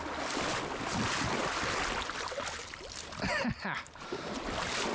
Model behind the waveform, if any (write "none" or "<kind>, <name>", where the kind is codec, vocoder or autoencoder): none